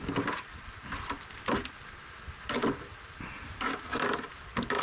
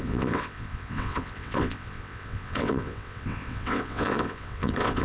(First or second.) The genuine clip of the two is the first